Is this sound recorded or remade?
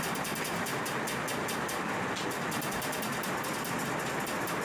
recorded